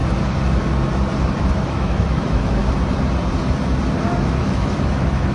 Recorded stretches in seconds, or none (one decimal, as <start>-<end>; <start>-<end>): 0.0-1.4; 2.6-4.4